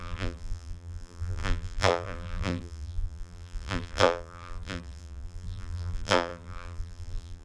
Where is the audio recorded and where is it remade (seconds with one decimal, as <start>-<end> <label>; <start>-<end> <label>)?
0.0-7.4 remade